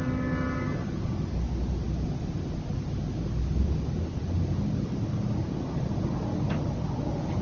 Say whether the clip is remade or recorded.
recorded